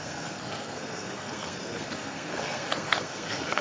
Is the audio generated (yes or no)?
yes